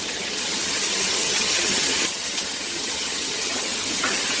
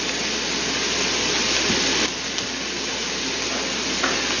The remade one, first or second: first